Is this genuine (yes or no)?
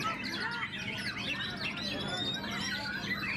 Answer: yes